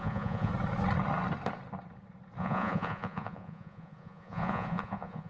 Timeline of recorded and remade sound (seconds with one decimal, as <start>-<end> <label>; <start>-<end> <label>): 0.0-0.5 remade; 0.5-2.4 recorded; 2.4-5.3 remade